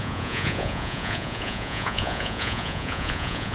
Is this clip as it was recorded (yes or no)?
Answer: no